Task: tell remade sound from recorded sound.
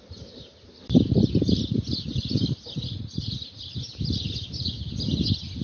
recorded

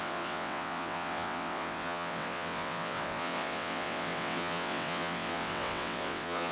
remade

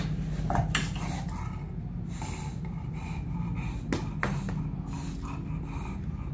recorded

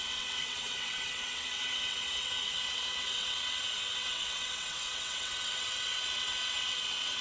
remade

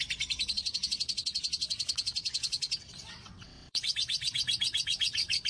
remade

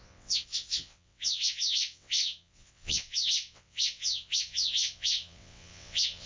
remade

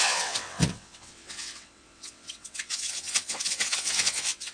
remade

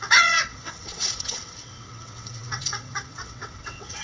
remade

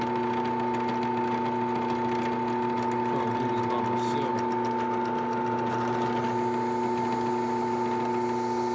recorded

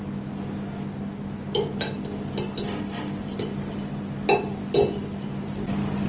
recorded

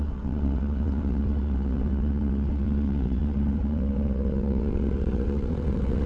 remade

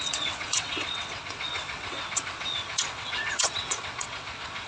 remade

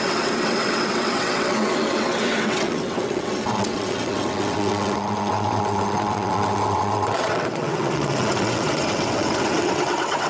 remade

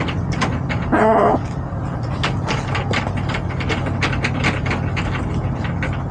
recorded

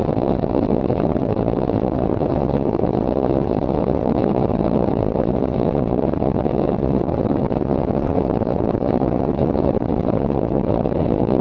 remade